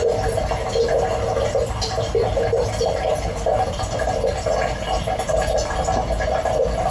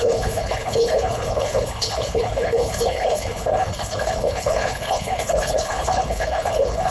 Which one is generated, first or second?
second